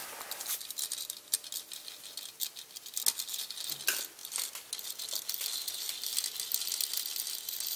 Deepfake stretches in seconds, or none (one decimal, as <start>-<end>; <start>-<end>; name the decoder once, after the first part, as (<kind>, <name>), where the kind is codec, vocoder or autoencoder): none